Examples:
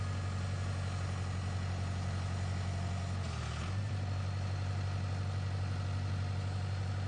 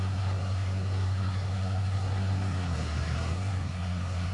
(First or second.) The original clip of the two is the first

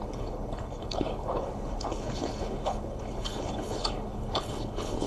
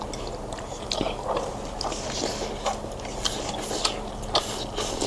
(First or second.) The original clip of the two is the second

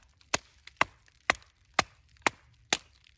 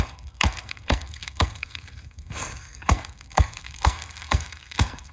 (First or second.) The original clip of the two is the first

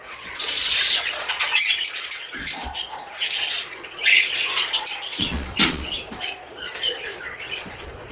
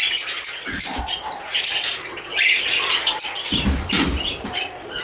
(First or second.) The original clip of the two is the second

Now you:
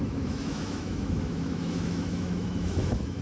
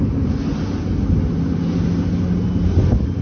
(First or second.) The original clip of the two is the second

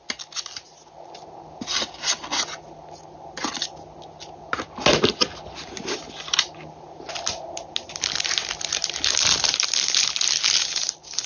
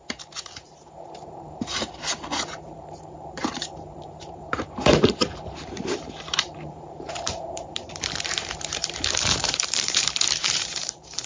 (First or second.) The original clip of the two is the first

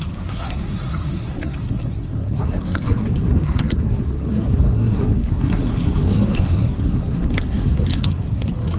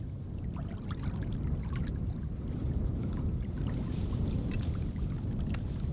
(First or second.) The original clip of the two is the second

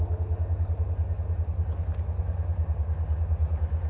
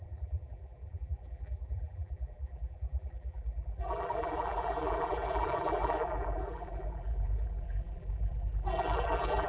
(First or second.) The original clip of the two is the first